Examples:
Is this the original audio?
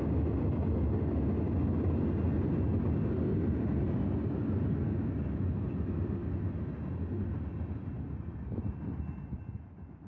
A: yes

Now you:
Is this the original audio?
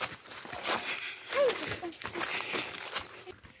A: yes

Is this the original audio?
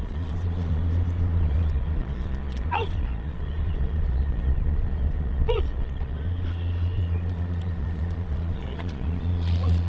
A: no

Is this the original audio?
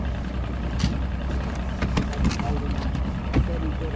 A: yes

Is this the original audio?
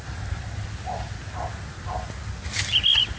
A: yes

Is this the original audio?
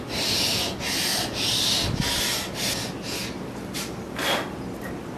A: yes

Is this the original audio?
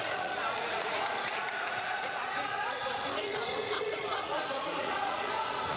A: no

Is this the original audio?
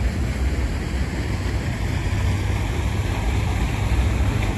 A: yes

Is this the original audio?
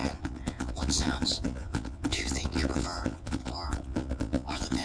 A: no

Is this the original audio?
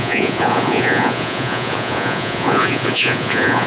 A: no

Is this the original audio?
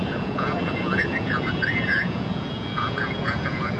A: no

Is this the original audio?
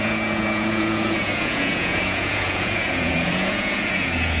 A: no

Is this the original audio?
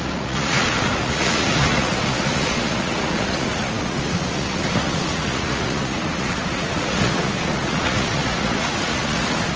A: no